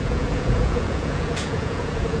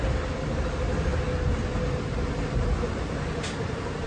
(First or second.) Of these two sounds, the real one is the second